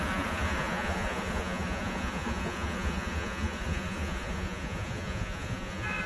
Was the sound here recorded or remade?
remade